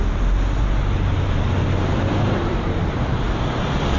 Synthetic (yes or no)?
no